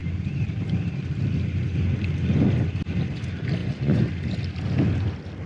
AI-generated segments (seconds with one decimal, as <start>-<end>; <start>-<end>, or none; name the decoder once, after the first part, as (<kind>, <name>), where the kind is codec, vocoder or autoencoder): 3.6-4.1 (vocoder, Vocos)